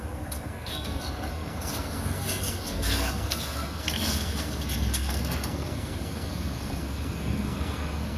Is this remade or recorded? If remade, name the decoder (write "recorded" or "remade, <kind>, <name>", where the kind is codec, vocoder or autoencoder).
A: remade, codec, SNAC